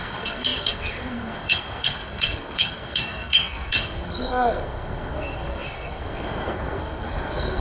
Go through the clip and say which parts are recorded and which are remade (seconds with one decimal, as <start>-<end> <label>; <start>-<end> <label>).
0.0-7.6 remade